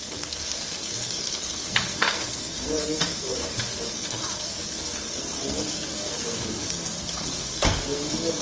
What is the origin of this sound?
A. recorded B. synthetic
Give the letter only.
B